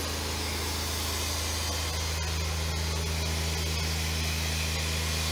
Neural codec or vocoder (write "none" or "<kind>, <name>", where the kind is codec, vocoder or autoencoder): none